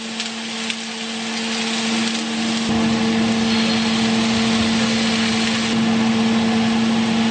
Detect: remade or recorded recorded